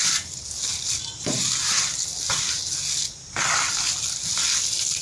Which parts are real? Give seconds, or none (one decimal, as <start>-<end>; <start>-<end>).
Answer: 0.0-5.0